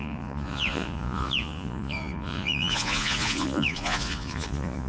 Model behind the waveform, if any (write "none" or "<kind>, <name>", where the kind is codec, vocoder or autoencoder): vocoder, Vocos